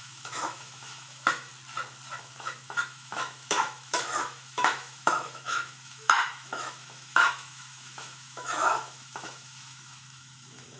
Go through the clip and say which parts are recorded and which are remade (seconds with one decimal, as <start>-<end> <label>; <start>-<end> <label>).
0.0-1.5 remade; 1.5-2.2 recorded; 2.2-10.8 remade